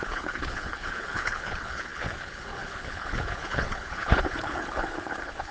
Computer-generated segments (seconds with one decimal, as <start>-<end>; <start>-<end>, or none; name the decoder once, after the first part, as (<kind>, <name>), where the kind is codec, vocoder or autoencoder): 0.0-5.5 (codec, HILCodec)